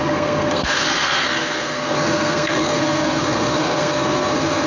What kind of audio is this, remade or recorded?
remade